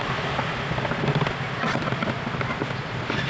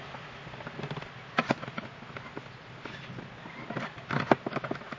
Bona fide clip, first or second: second